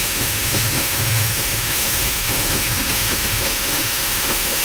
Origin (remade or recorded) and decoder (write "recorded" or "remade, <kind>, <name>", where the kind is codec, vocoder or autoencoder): remade, autoencoder, DAC-VAE